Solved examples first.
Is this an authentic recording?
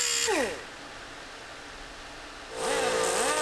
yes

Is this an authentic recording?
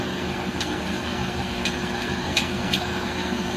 no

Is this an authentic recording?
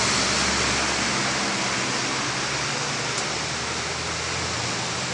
yes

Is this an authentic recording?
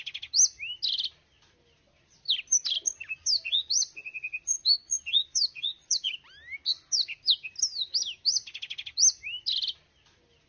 yes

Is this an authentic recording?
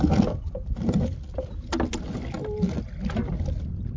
yes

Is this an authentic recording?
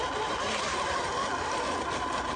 yes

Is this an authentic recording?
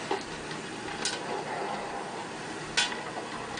yes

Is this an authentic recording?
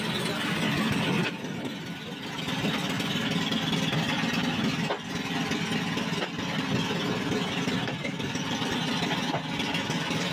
yes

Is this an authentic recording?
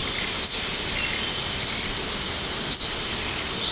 yes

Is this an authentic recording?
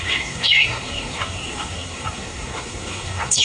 no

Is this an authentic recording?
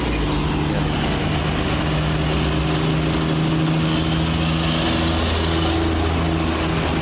yes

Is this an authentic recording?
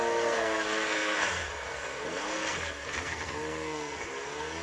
no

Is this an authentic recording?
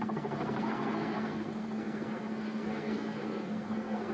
no